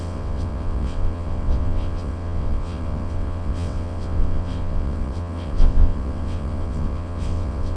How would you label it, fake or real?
fake